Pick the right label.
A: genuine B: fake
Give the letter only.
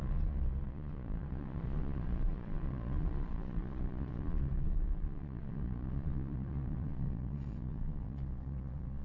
B